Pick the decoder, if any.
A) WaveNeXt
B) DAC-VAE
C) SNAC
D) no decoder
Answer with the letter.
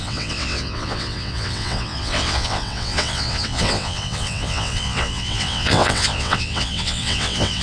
A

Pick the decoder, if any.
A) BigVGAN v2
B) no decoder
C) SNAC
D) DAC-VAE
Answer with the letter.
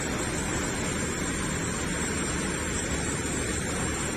B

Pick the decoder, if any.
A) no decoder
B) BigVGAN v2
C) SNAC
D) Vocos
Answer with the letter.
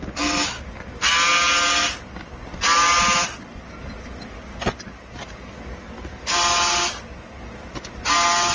A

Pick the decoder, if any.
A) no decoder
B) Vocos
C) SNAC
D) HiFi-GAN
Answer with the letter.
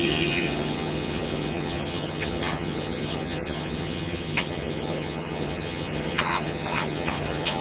D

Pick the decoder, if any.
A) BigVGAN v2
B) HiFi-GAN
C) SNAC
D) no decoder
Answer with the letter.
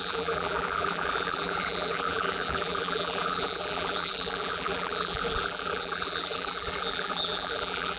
A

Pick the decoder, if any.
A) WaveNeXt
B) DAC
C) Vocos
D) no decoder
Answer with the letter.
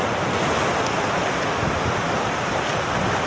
D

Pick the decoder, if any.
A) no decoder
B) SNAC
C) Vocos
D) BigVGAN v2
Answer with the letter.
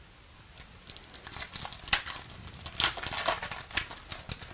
A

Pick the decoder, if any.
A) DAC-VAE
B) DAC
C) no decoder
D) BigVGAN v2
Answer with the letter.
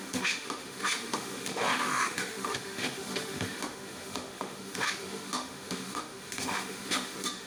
A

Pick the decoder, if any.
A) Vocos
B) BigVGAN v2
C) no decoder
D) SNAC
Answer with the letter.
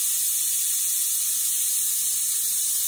C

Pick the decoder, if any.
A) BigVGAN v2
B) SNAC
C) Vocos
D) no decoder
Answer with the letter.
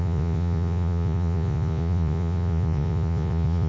C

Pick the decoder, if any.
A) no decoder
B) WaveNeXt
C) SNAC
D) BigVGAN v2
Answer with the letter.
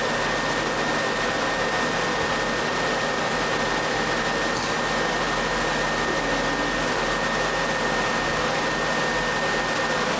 A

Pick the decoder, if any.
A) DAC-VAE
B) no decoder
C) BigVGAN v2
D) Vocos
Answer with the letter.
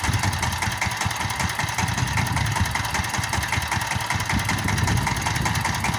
B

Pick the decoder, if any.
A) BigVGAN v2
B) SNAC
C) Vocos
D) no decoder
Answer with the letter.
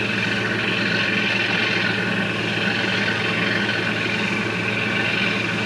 D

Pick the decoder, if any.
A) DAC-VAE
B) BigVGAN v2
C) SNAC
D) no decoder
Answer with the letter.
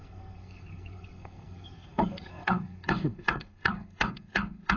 C